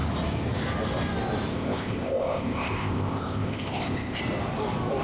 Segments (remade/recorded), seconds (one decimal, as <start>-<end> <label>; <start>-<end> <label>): 0.0-1.5 recorded; 1.5-4.2 remade; 4.2-5.0 recorded